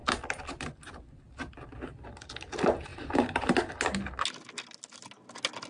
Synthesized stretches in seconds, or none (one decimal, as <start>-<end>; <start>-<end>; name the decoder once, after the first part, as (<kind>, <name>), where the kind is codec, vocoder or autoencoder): none